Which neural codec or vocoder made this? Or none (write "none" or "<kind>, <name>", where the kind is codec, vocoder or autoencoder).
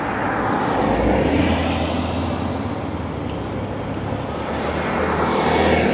none